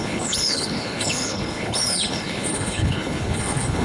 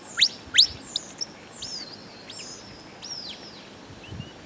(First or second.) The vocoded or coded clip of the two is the first